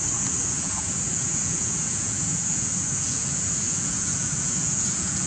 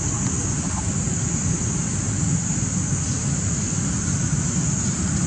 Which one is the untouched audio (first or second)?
second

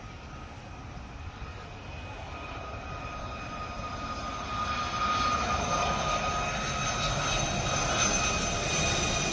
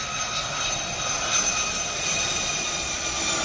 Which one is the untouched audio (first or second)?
first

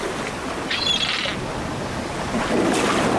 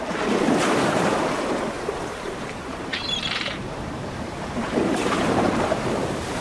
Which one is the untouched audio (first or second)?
first